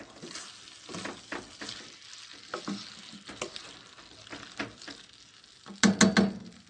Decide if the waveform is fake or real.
real